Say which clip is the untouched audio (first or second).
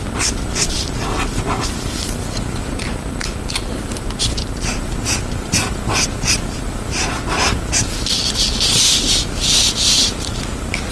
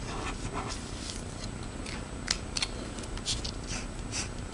second